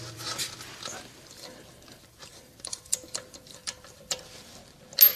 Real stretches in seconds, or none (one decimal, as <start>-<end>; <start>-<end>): 4.6-5.2